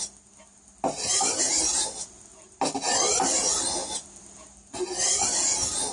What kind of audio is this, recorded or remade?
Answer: recorded